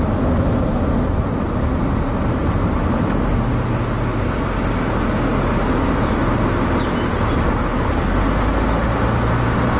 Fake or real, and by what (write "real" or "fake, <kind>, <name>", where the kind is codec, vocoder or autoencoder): real